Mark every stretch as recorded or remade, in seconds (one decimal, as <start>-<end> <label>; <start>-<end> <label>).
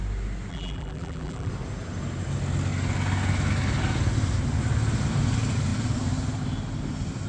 0.0-0.5 recorded; 0.5-1.5 remade; 1.5-7.3 recorded